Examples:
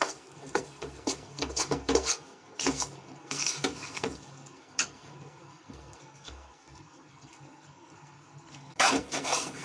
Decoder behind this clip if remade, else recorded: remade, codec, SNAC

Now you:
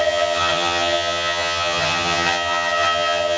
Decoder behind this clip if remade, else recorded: remade, vocoder, HiFi-GAN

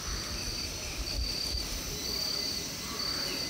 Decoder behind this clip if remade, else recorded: recorded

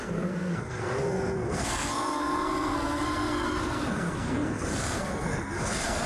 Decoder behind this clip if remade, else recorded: remade, codec, SNAC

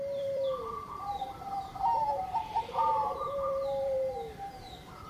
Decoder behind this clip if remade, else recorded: remade, vocoder, BigVGAN v2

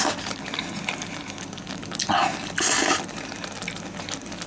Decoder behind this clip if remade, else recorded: recorded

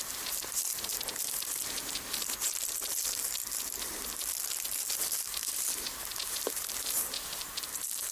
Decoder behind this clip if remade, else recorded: recorded